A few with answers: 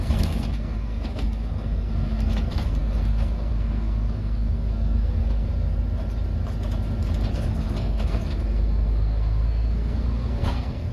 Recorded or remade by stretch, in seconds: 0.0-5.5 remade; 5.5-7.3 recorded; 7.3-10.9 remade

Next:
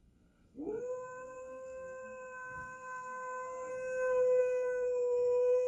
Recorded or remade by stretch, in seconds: 0.0-3.7 remade; 3.7-4.4 recorded; 4.4-5.7 remade

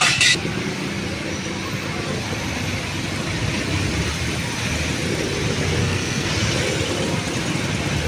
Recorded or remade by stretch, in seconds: 0.0-5.8 recorded; 5.8-6.3 remade; 6.3-8.1 recorded

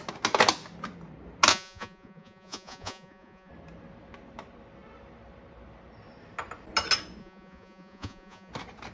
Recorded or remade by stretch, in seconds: 0.0-1.5 recorded; 1.5-3.5 remade; 3.5-7.2 recorded; 7.2-8.5 remade; 8.5-8.9 recorded

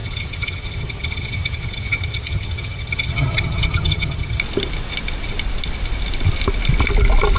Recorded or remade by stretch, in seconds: 0.0-4.4 remade; 4.4-7.4 recorded

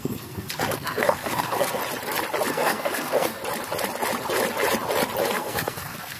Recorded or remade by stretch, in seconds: 0.0-1.8 remade; 1.8-2.5 recorded; 2.5-3.4 remade; 3.4-5.3 recorded; 5.3-6.2 remade

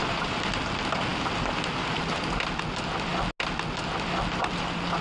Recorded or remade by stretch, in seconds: 0.0-5.0 recorded

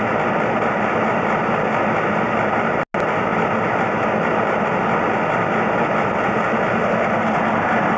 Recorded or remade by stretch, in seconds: 0.0-8.0 recorded